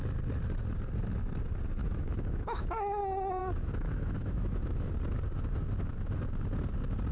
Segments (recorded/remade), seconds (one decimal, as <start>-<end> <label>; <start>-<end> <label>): 0.0-1.8 recorded; 1.8-3.0 remade; 3.0-3.4 recorded; 3.4-4.9 remade; 4.9-7.1 recorded